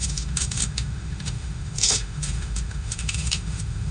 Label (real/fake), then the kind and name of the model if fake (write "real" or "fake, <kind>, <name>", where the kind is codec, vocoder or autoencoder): fake, autoencoder, DAC-VAE